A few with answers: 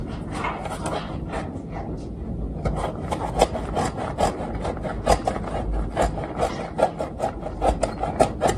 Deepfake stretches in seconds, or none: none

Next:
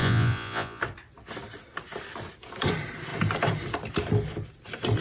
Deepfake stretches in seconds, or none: 0.0-0.8